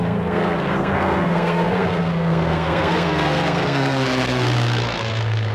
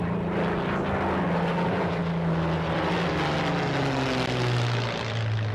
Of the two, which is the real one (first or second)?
second